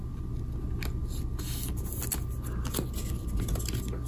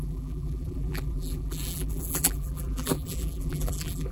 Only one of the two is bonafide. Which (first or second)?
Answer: first